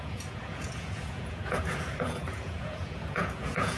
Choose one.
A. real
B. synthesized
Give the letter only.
B